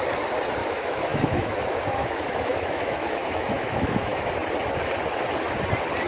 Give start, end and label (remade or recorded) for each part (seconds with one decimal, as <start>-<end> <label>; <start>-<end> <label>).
0.0-0.6 recorded; 0.6-4.3 remade; 4.3-6.1 recorded